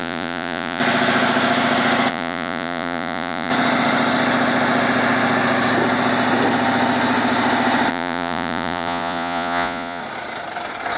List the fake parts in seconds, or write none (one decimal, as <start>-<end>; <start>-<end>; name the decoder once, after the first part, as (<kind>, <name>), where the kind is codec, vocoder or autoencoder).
0.0-0.8 (vocoder, Vocos); 2.1-3.5; 7.9-10.0